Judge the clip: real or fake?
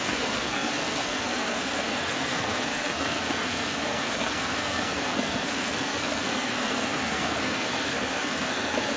fake